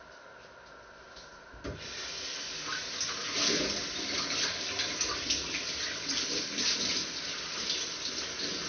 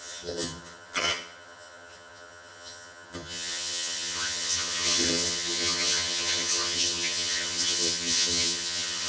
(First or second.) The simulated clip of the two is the second